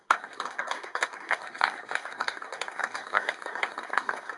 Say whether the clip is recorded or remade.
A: remade